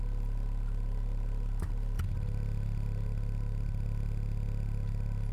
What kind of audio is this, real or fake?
real